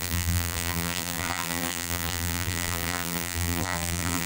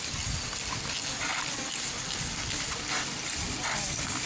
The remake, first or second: first